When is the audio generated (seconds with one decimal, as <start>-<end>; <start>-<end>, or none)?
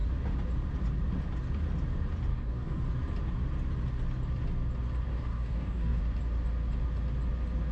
2.3-2.8; 5.1-6.0